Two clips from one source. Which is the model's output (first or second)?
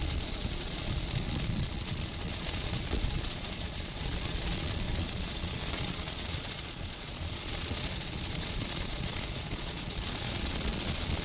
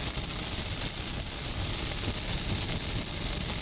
first